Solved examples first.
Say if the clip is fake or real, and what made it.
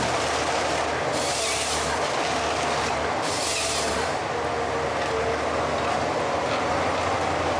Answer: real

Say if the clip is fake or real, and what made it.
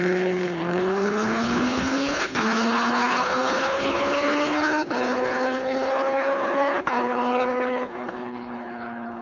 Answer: fake, codec, HILCodec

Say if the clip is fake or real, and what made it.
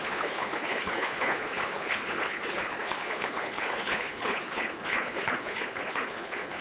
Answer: fake, codec, HILCodec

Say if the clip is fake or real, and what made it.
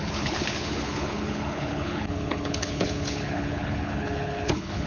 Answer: fake, codec, HILCodec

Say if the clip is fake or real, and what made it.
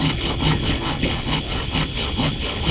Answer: fake, codec, HILCodec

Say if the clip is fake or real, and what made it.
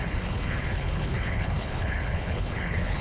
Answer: fake, codec, HILCodec